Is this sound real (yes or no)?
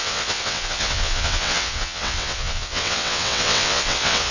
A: no